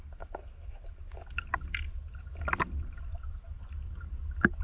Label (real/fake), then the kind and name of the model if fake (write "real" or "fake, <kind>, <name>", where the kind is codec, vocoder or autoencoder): real